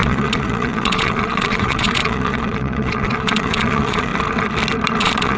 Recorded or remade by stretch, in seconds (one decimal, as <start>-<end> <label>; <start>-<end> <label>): 0.0-4.1 remade; 4.1-5.0 recorded; 5.0-5.4 remade